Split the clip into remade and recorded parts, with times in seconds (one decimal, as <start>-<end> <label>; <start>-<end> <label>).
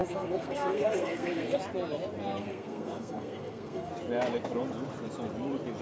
0.0-1.6 remade; 1.6-2.4 recorded; 2.4-3.9 remade; 3.9-5.8 recorded